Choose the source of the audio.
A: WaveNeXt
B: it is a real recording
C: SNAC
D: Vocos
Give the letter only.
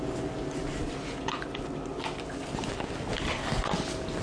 B